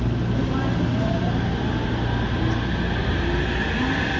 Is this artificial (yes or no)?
no